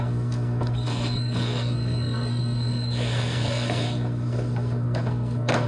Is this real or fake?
fake